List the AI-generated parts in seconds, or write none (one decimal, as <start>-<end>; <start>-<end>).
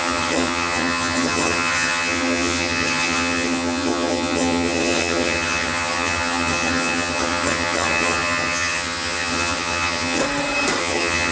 0.0-10.2; 10.8-11.3